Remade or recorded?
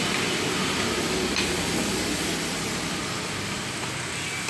recorded